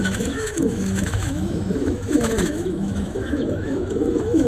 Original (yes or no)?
no